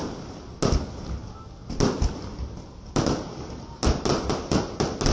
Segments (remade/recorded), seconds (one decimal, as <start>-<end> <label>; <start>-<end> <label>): 0.0-5.1 recorded

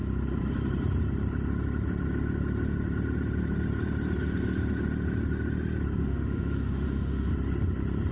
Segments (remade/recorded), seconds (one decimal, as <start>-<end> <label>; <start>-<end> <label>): 0.0-6.0 recorded; 6.0-7.3 remade; 7.3-8.1 recorded

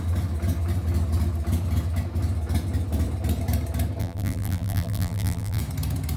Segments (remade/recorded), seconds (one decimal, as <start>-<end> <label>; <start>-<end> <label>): 0.0-4.0 recorded; 4.0-5.6 remade; 5.6-6.2 recorded

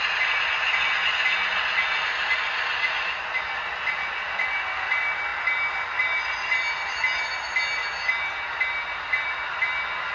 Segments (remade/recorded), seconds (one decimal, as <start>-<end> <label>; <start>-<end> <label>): 0.0-10.1 recorded

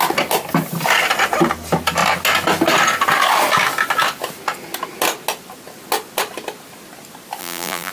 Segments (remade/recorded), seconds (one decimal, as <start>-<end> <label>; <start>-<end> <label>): 0.0-7.4 recorded; 7.4-7.9 remade